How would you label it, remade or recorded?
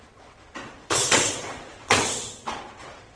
remade